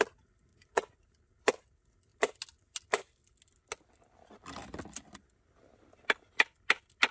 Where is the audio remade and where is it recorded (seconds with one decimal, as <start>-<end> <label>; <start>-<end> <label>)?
0.0-0.5 recorded; 0.5-1.1 remade; 1.1-7.1 recorded